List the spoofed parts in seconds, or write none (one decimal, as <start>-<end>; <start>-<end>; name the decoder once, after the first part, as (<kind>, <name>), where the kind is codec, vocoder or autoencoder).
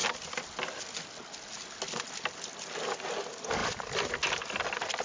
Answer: none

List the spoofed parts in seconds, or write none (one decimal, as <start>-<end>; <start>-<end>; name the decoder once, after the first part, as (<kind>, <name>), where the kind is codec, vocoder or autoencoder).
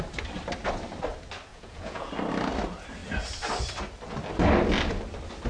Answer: 1.5-2.1 (vocoder, Vocos)